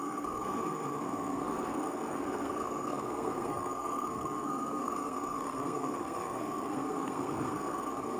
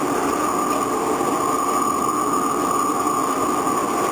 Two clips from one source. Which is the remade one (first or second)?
first